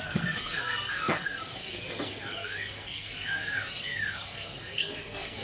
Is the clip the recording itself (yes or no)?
no